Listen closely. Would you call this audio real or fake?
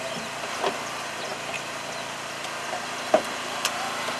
real